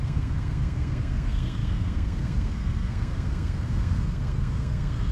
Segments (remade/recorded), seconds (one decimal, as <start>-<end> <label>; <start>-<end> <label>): 0.0-5.1 remade